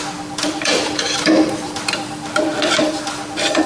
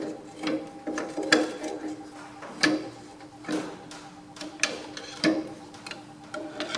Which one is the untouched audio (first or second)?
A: second